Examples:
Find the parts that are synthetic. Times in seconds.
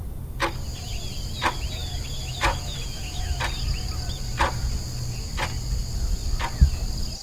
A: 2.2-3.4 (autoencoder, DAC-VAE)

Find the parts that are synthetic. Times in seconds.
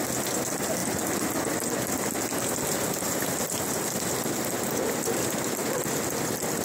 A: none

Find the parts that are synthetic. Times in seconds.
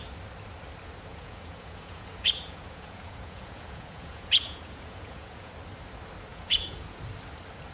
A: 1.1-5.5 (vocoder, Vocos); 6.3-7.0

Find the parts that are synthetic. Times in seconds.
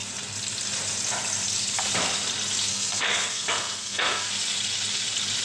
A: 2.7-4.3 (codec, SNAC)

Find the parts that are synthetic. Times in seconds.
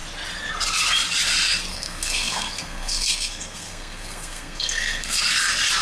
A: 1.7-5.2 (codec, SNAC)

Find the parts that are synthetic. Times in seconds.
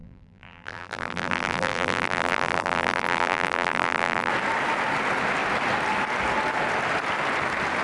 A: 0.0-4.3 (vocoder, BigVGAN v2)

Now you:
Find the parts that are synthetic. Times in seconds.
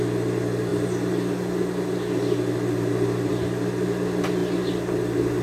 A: none